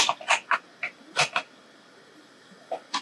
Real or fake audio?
real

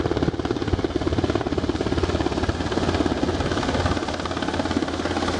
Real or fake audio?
real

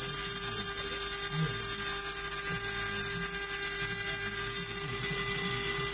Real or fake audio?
real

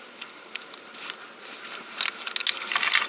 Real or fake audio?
real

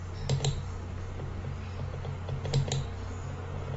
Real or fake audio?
real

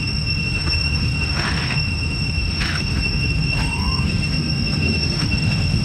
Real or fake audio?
fake